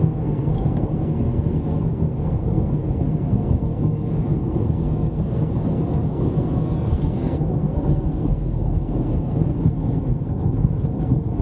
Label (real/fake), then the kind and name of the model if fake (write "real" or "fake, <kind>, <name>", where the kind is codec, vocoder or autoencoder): fake, codec, SNAC